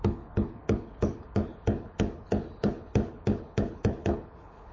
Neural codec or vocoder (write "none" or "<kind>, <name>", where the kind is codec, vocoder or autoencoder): codec, HILCodec